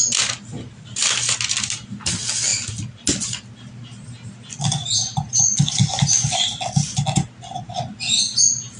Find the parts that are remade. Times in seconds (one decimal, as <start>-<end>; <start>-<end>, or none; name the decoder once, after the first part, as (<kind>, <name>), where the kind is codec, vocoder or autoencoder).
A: none